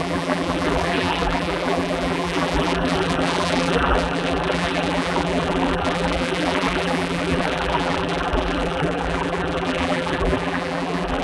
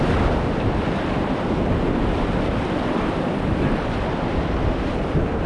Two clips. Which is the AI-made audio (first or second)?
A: first